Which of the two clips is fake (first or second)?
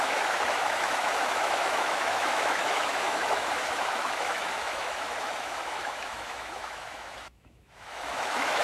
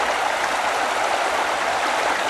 first